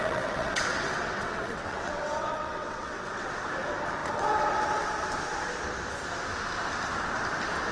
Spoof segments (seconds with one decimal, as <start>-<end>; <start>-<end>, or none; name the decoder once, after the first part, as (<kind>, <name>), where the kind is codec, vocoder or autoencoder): 0.0-3.5 (vocoder, WaveNeXt)